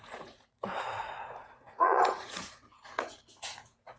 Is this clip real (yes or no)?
no